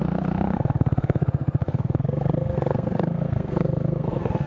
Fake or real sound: fake